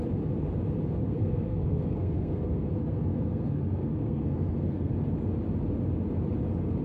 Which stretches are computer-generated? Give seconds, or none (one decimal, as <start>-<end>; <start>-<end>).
1.0-4.9